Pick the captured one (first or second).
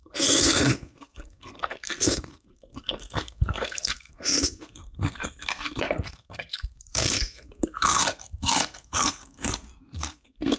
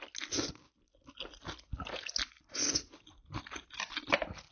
second